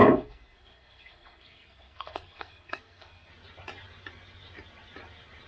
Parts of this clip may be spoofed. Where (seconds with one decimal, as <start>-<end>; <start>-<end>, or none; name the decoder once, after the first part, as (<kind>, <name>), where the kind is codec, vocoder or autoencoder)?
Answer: 0.0-3.3 (codec, SNAC)